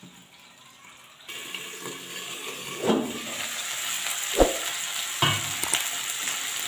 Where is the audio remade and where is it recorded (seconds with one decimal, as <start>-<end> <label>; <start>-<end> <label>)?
0.0-2.1 recorded; 2.1-2.9 remade; 2.9-6.7 recorded